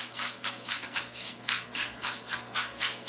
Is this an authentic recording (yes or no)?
no